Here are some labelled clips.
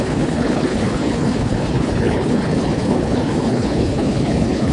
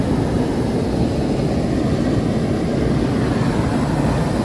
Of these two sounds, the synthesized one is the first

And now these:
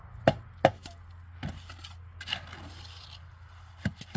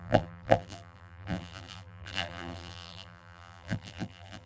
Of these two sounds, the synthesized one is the second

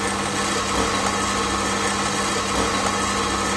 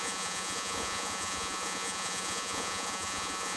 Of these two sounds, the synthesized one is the second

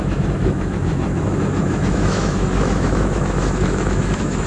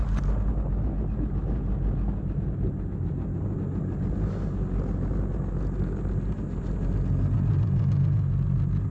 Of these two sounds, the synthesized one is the first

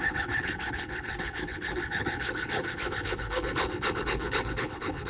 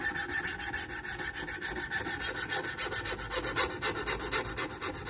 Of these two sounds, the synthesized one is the first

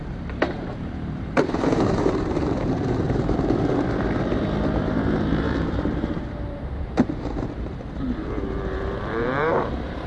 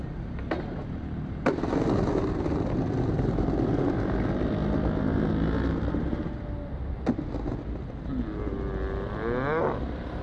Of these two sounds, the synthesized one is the first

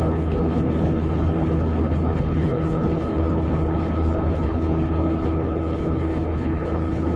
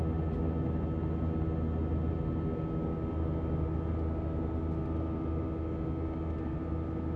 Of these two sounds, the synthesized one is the first